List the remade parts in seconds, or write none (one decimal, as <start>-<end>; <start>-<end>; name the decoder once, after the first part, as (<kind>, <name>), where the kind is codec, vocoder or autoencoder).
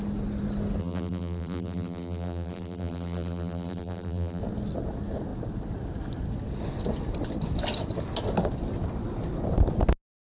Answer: 0.8-4.4 (vocoder, BigVGAN v2)